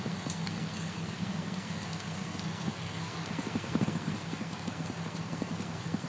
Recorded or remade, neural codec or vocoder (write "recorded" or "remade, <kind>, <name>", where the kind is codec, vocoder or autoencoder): remade, codec, SNAC